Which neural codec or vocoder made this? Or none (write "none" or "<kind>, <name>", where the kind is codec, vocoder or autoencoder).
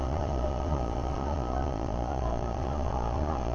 vocoder, Vocos